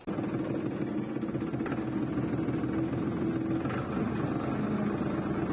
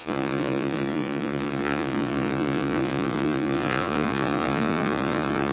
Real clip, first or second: first